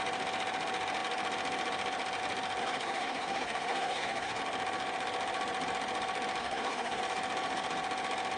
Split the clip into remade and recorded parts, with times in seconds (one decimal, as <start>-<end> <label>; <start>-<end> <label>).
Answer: 0.0-2.6 recorded; 2.6-4.4 remade; 4.4-6.4 recorded; 6.4-7.0 remade; 7.0-8.4 recorded